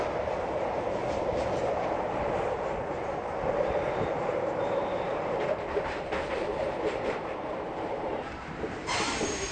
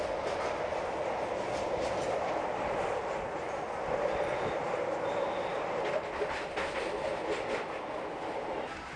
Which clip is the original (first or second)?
second